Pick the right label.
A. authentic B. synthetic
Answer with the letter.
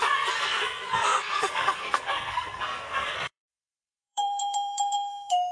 B